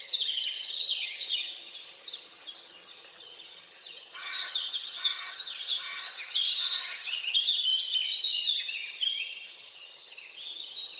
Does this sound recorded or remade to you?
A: remade